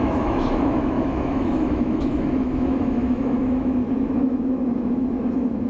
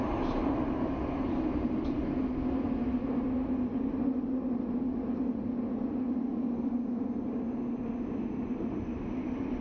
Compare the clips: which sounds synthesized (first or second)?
first